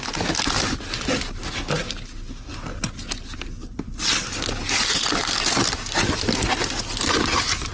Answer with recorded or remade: recorded